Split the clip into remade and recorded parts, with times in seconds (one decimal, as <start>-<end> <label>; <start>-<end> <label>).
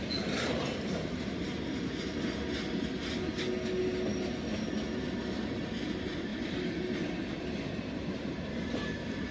0.0-9.3 recorded